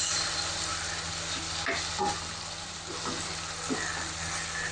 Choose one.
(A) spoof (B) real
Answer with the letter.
B